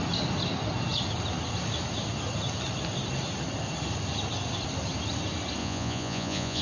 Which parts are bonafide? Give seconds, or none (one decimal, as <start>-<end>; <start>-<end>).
0.0-5.6